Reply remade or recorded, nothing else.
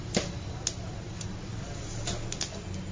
recorded